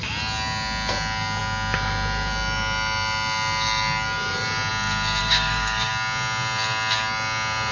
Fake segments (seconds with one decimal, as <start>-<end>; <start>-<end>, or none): 5.2-5.9